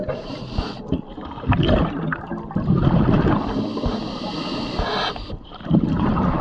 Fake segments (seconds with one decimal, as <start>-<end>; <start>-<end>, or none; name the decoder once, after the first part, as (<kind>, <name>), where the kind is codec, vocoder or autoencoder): 0.0-2.3 (vocoder, BigVGAN v2); 5.1-6.4